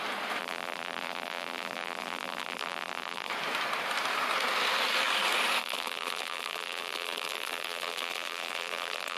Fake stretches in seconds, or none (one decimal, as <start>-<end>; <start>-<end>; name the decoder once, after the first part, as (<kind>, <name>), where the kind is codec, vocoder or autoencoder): 0.4-3.3 (vocoder, BigVGAN v2); 5.6-9.2